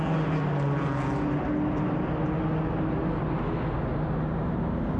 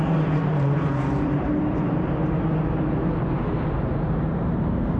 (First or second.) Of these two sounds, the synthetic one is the second